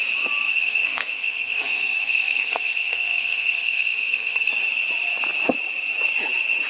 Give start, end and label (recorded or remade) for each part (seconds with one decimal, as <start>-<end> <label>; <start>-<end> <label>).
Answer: 0.0-0.5 recorded; 0.5-4.5 remade; 4.5-6.7 recorded